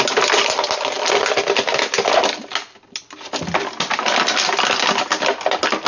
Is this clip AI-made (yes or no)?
no